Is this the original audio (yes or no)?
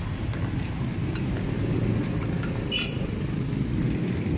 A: yes